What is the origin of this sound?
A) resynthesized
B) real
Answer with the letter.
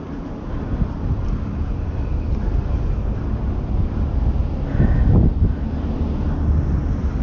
B